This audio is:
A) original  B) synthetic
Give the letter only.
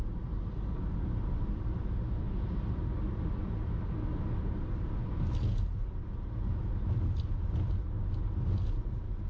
A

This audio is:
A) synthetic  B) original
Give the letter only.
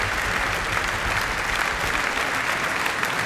B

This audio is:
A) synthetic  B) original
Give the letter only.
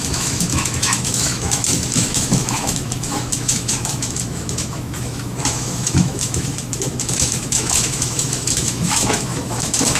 A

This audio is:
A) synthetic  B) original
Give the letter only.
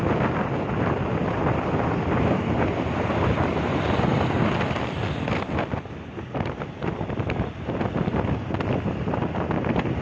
B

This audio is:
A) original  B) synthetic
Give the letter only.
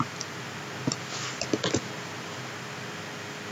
A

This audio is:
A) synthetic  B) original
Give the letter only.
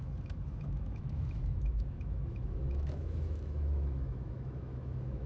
A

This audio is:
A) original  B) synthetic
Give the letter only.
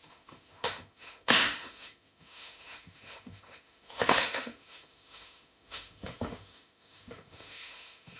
B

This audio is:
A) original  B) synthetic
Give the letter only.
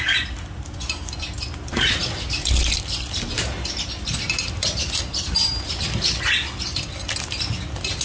A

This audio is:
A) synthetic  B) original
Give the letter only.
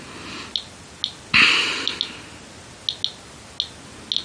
B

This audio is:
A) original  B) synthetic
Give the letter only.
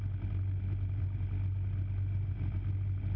A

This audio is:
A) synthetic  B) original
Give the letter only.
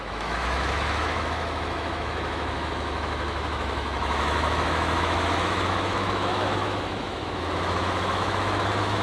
A